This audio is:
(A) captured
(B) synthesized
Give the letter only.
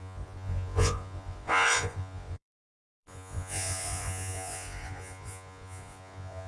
B